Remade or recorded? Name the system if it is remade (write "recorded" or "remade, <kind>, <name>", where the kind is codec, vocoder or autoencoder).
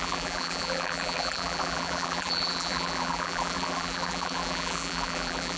remade, vocoder, BigVGAN v2